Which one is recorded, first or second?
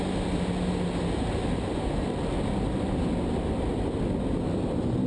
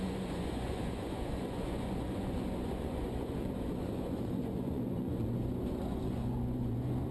first